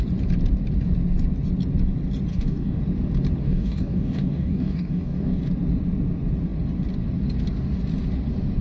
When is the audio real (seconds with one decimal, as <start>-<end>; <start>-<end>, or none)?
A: 0.0-2.3; 2.8-3.4; 5.4-8.6